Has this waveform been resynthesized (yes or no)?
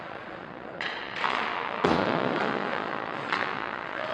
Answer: yes